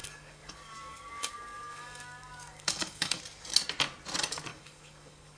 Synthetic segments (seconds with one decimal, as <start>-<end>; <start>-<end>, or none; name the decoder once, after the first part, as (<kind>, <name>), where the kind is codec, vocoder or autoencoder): 0.0-3.2 (codec, DAC); 4.5-5.4